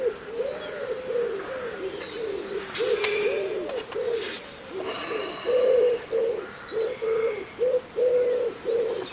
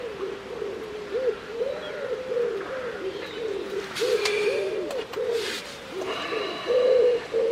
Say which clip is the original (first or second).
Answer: first